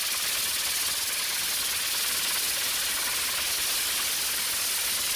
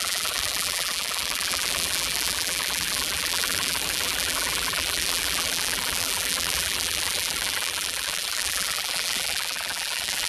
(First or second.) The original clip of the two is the first